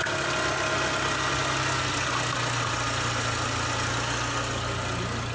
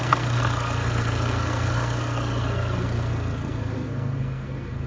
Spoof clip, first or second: second